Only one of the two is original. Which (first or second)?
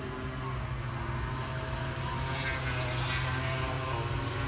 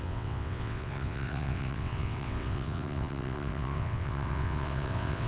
first